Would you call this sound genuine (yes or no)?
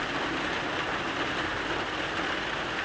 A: yes